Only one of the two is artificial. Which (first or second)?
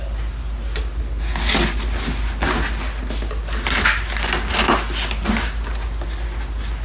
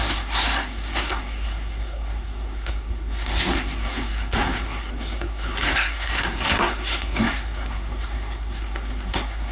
second